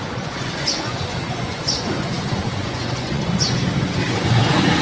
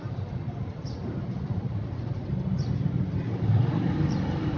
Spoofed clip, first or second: first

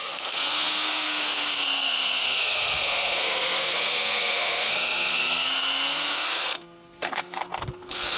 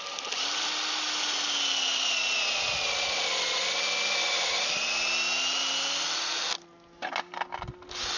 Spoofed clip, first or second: first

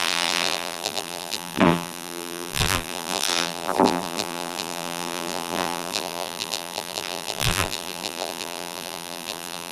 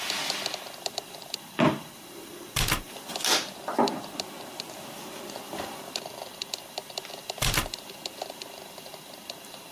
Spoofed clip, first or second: first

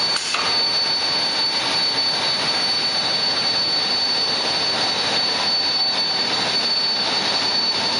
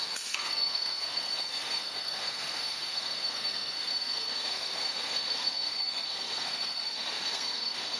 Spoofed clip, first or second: second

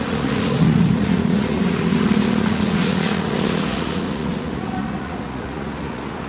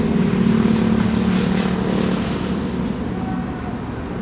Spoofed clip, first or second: first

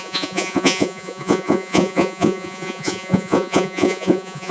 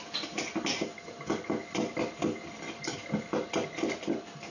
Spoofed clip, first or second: first